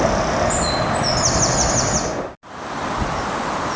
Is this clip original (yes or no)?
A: yes